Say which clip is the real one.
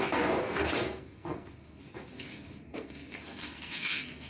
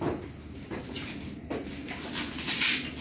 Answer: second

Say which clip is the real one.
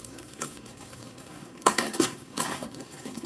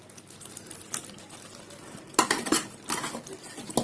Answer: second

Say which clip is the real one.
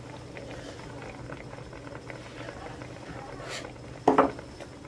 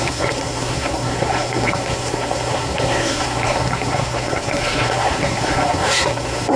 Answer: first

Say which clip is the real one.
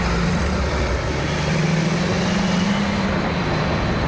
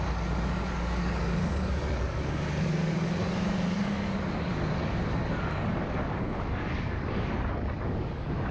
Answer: first